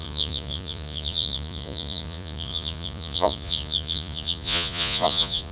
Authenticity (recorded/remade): remade